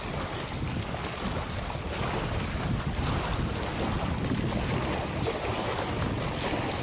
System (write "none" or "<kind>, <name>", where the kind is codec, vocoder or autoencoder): none